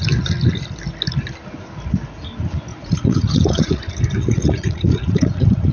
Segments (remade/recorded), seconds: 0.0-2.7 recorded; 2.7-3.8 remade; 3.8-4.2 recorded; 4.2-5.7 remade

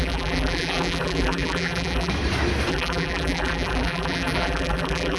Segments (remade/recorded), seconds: 0.0-2.1 remade; 2.1-2.7 recorded; 2.7-5.2 remade

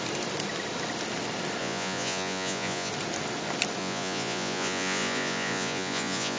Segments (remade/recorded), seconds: 0.0-1.6 recorded; 1.6-2.9 remade; 2.9-3.8 recorded; 3.8-6.4 remade

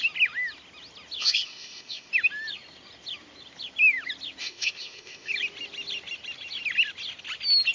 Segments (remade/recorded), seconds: 0.0-1.2 recorded; 1.2-2.1 remade; 2.1-4.4 recorded; 4.4-5.3 remade; 5.3-7.7 recorded